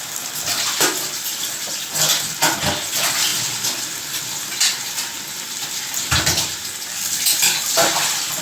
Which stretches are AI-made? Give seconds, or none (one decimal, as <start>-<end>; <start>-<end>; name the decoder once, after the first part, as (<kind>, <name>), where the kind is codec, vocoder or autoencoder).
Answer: none

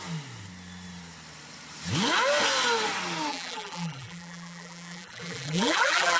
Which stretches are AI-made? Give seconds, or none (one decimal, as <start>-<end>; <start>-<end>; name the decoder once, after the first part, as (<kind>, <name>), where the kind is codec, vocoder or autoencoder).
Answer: 3.3-6.2 (vocoder, BigVGAN v2)

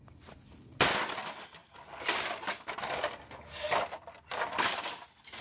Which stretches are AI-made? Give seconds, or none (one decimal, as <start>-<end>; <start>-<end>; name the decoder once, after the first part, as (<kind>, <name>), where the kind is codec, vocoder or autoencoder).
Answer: none

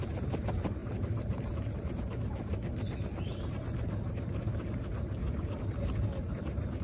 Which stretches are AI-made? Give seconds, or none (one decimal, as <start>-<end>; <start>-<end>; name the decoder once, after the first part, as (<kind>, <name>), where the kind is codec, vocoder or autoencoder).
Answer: 0.0-2.5 (vocoder, BigVGAN v2)

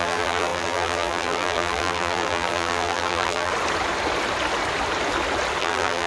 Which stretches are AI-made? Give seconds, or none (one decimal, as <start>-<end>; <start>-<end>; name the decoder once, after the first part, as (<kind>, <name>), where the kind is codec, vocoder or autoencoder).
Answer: 0.0-3.5 (vocoder, BigVGAN v2); 5.6-6.1

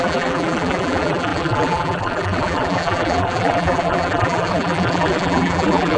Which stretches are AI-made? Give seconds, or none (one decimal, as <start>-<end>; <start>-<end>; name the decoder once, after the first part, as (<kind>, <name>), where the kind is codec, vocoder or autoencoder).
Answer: 0.0-6.0 (vocoder, BigVGAN v2)

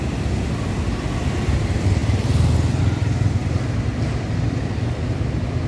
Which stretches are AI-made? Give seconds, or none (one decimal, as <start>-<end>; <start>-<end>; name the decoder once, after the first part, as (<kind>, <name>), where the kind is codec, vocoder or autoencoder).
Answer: 0.0-5.7 (vocoder, BigVGAN v2)